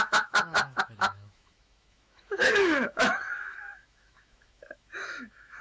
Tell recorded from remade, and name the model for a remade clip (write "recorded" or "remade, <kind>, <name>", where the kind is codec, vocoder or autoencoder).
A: remade, autoencoder, DAC-VAE